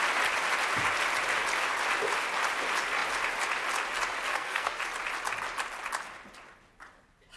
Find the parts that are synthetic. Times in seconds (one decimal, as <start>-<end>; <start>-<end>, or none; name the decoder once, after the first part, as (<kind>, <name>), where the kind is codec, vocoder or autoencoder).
4.3-4.8 (codec, SNAC)